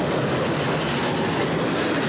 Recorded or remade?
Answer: recorded